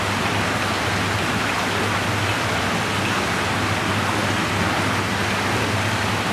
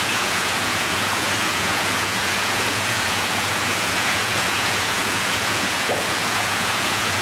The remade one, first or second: second